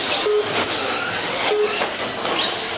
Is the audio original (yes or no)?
yes